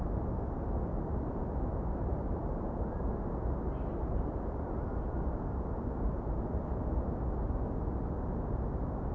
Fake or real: real